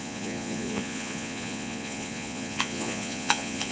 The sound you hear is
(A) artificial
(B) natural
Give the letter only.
A